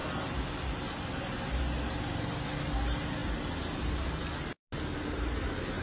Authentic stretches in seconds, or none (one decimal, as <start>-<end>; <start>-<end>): 0.0-5.8